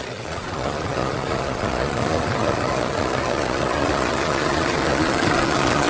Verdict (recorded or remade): remade